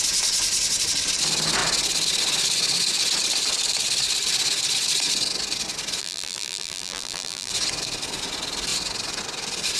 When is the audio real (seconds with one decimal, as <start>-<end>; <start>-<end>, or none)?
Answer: 0.0-6.0; 7.5-9.8